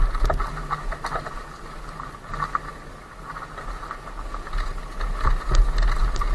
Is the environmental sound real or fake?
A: real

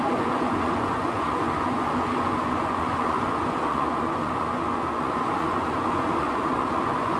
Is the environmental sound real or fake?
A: fake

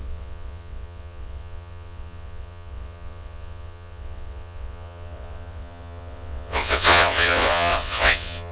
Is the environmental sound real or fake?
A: fake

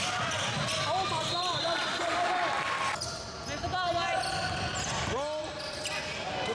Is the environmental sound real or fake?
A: real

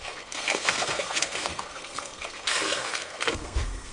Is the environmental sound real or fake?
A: fake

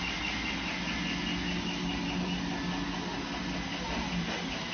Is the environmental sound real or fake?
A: real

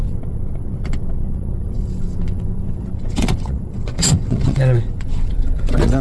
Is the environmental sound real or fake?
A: fake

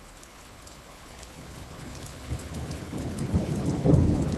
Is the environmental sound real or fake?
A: fake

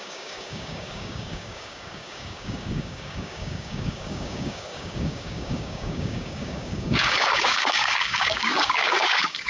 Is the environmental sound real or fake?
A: fake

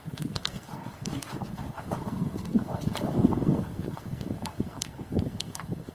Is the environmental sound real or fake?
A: fake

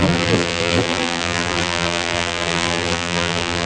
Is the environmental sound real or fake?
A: fake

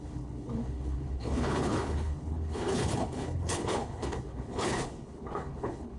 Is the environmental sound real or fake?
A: fake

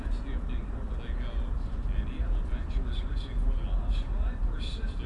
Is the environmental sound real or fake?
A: real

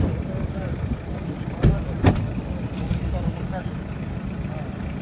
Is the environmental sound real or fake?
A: fake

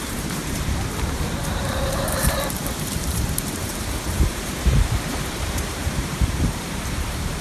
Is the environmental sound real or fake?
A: fake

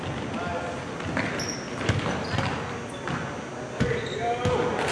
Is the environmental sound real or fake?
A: real